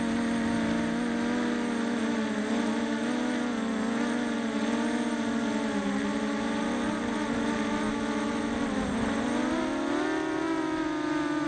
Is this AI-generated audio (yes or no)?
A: no